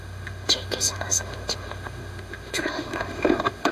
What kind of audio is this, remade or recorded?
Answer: remade